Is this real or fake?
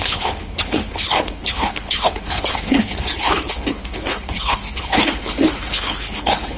fake